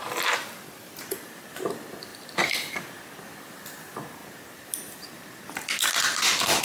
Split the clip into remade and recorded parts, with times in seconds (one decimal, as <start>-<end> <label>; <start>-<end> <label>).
0.0-6.6 recorded